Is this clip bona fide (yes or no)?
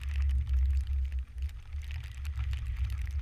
yes